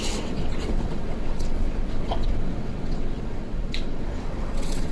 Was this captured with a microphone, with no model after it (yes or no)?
no